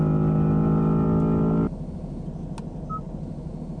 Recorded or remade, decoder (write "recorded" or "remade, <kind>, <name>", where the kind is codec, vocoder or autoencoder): recorded